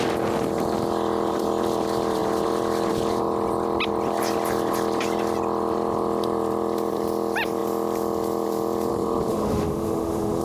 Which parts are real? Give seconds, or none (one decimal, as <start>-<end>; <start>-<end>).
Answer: 0.0-9.3